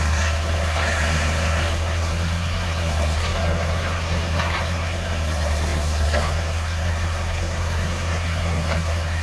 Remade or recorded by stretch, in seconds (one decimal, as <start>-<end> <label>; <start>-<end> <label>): 0.0-9.2 remade